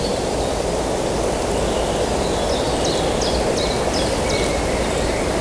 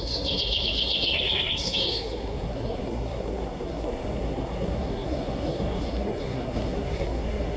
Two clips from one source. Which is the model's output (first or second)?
second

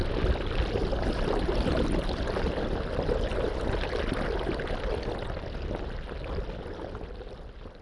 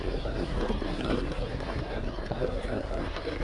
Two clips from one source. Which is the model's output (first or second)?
second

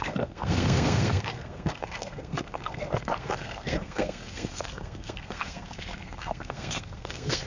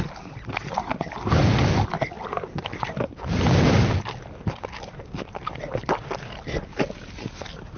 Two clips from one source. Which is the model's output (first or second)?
first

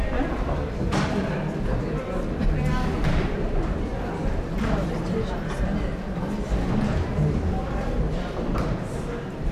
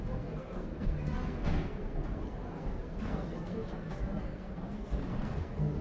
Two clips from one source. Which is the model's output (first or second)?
second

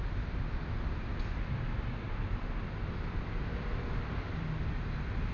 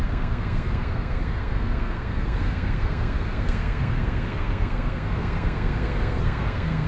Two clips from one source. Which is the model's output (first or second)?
second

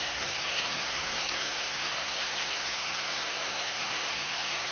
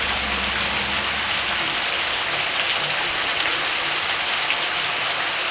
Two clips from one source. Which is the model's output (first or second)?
first